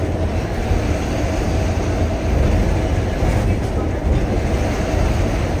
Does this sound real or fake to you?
real